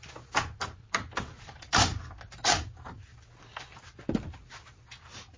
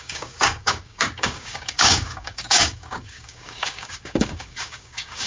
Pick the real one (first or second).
first